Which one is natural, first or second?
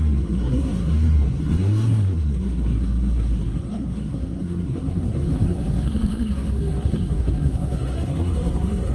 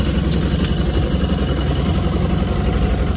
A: second